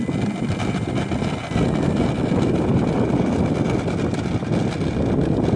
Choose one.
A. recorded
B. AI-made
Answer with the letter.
A